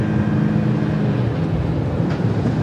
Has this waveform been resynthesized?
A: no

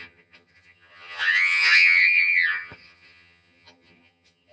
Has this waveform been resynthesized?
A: yes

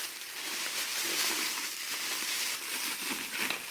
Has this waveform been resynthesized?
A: yes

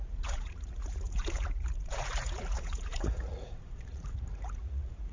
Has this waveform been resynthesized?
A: yes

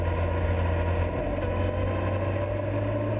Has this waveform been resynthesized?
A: no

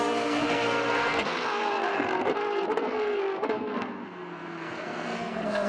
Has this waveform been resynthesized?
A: yes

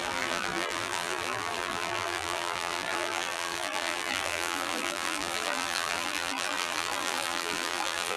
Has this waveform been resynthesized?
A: yes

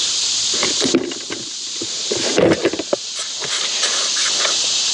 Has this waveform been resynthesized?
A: no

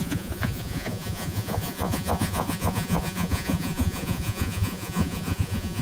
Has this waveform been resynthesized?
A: yes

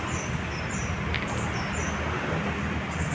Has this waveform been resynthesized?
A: no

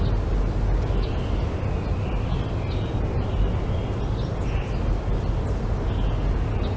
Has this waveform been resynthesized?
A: no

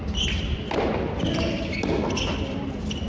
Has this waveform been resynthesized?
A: no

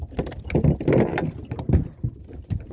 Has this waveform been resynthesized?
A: no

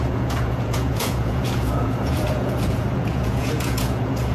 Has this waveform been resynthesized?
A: yes